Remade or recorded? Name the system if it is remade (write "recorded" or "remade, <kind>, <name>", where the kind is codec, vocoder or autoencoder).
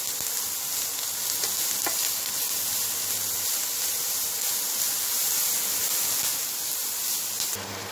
recorded